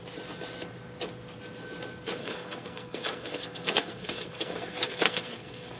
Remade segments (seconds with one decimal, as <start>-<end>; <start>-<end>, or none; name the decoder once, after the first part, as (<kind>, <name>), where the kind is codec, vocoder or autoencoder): 2.2-5.8 (codec, SNAC)